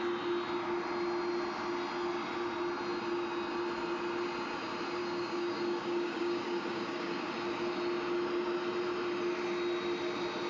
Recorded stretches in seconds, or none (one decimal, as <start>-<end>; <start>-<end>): 0.0-5.0; 7.3-10.5